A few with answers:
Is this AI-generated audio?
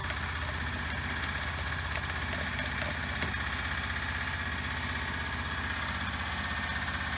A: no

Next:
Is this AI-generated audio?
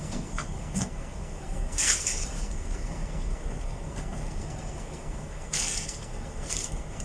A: yes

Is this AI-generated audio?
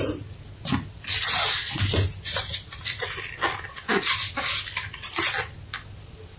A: no